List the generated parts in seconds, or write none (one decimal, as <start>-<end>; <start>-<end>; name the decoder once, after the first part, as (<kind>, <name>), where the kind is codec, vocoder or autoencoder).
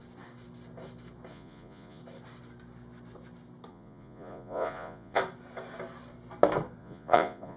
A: 1.3-2.0 (vocoder, Vocos); 3.7-5.2; 6.8-7.6